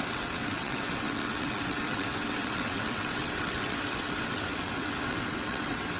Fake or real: fake